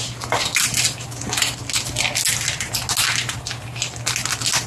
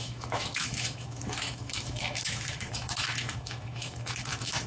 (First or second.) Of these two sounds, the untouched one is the first